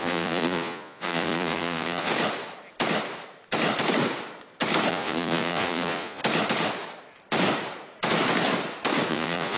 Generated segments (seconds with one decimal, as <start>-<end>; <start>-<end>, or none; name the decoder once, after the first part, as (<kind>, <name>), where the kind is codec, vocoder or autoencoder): 0.0-2.1 (vocoder, Vocos); 4.9-6.2; 9.1-9.6